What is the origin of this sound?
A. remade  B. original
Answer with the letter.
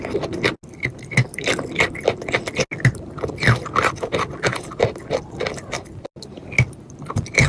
B